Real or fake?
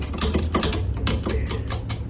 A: real